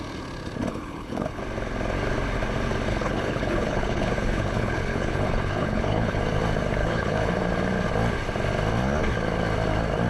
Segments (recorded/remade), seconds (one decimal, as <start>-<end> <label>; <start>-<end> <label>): 0.0-0.7 recorded; 0.7-1.4 remade; 1.4-2.9 recorded; 2.9-6.2 remade; 6.2-6.8 recorded; 6.8-7.3 remade; 7.3-10.1 recorded

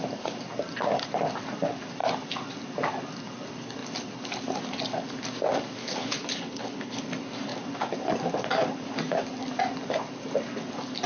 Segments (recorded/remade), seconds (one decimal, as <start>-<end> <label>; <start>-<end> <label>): 0.0-5.8 recorded; 5.8-7.0 remade; 7.0-11.1 recorded

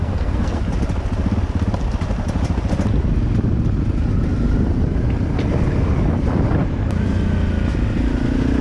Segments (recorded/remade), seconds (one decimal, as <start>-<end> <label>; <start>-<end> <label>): 0.0-0.6 remade; 0.6-8.6 recorded

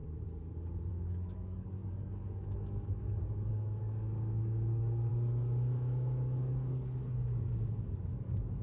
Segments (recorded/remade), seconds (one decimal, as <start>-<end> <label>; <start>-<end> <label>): 0.0-0.9 recorded; 0.9-8.6 remade